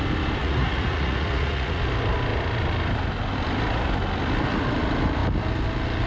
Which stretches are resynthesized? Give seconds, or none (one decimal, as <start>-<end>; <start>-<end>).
0.4-1.8